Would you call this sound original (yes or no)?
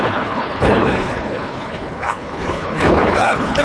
no